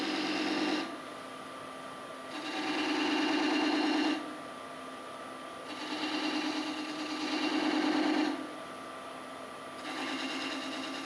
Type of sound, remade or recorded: recorded